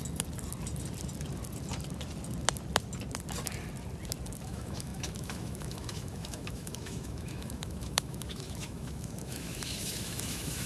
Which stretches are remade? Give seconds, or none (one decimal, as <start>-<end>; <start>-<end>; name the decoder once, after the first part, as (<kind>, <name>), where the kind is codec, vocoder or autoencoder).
4.4-10.7 (autoencoder, DAC-VAE)